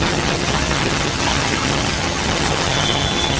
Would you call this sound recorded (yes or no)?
no